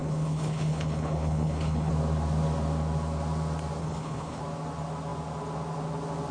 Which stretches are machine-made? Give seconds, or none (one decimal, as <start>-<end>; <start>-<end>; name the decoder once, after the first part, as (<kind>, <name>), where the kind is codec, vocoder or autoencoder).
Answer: 0.0-1.9 (codec, HILCodec); 3.8-4.4